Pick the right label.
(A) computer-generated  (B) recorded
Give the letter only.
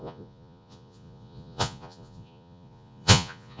A